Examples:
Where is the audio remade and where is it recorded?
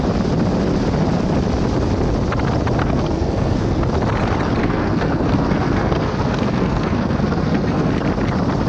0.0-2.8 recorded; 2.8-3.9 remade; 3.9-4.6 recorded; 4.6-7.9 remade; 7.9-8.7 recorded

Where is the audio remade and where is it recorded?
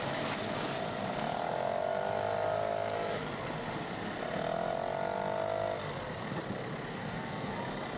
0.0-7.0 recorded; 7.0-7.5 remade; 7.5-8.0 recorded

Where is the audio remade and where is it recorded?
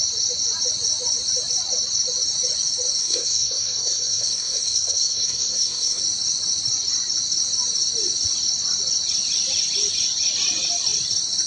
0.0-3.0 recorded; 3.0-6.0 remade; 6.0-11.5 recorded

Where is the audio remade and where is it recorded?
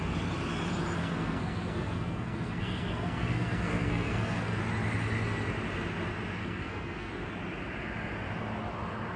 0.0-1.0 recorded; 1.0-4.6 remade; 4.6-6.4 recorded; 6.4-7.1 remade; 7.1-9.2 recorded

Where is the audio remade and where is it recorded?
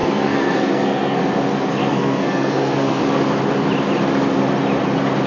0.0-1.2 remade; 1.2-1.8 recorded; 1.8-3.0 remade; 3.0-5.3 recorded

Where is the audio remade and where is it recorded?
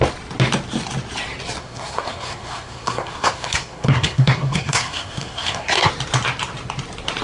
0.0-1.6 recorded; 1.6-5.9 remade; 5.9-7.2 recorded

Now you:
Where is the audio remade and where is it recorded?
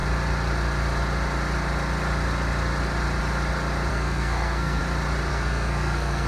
0.0-3.9 recorded; 3.9-4.8 remade; 4.8-5.3 recorded; 5.3-6.3 remade